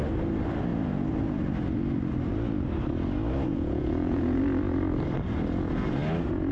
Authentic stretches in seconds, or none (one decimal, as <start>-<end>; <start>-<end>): 0.0-3.5; 4.4-6.5